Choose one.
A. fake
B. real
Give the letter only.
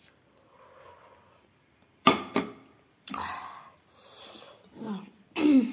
A